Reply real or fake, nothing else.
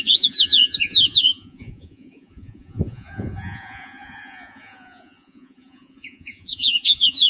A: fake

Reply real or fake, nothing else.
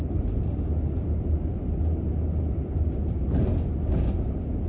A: real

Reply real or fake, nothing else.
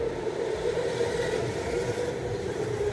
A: real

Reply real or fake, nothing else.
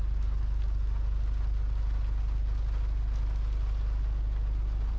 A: real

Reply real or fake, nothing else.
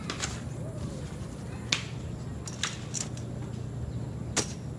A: real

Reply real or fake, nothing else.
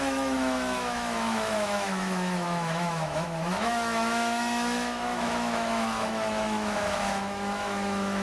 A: fake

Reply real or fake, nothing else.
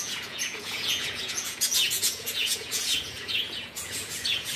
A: fake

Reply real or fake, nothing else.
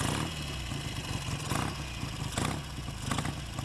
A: real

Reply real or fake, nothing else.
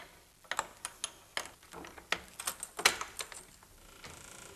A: real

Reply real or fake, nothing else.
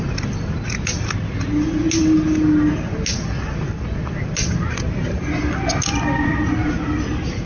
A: real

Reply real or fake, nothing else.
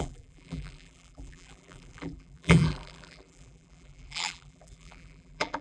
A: fake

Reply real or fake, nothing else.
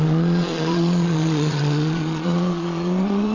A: fake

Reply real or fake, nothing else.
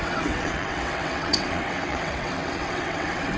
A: fake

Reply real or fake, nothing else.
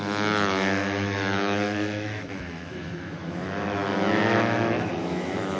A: fake